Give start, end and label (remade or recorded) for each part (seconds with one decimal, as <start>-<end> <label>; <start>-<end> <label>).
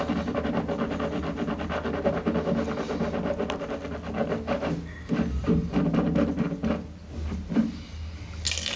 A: 0.0-8.8 recorded